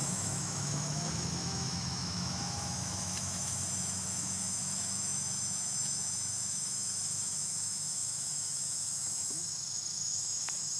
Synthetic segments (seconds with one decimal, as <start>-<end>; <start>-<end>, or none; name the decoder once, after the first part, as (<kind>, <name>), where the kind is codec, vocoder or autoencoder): 0.0-10.8 (autoencoder, DAC-VAE)

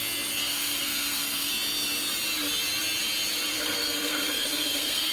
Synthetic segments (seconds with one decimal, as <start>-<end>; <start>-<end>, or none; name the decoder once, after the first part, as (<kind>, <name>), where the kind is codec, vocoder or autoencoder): 0.4-1.5 (codec, SNAC); 3.5-5.1

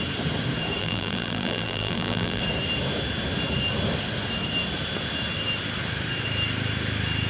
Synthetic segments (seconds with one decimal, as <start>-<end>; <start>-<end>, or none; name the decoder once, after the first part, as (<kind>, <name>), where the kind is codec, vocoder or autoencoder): 0.8-2.4 (vocoder, BigVGAN v2)